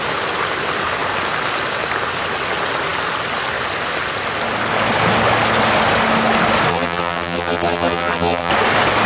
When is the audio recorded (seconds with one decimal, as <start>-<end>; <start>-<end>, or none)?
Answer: 0.0-6.7; 8.5-9.1